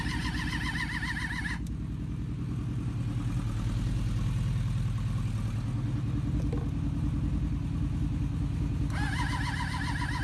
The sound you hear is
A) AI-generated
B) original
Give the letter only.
B